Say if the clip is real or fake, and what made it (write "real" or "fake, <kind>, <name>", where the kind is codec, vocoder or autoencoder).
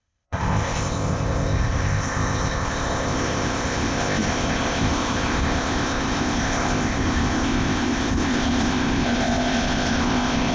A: fake, codec, ZipCodec